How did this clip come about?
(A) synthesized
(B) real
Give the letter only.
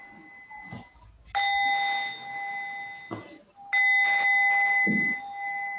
B